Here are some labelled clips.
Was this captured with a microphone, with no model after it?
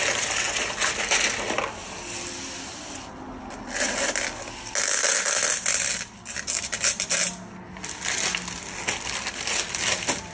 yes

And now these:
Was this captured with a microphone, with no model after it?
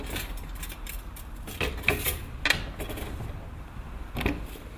yes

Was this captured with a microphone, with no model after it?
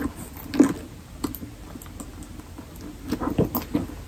yes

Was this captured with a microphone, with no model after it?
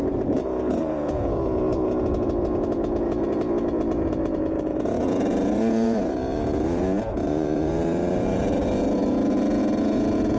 no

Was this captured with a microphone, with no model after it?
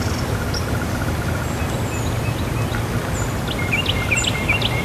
yes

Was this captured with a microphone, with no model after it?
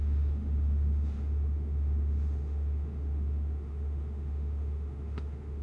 no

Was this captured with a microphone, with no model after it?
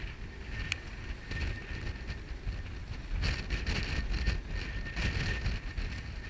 yes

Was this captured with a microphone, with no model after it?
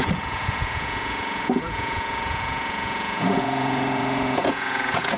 no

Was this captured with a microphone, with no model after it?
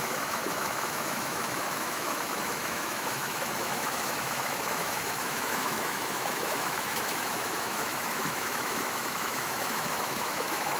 no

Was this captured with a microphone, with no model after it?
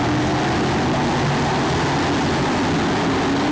yes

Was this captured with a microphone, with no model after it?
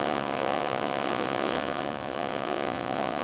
no